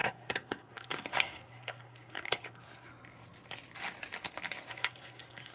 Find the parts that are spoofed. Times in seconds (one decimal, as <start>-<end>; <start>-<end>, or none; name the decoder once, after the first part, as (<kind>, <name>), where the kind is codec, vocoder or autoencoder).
0.0-2.9 (codec, SNAC); 4.7-5.5